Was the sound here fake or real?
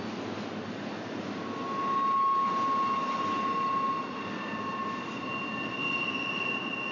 real